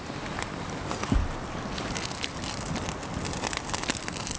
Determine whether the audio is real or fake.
real